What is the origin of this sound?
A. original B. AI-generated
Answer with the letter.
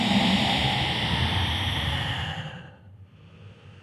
A